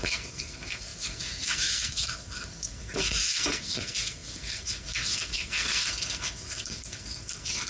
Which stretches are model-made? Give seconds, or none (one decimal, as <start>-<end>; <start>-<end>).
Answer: 0.0-7.7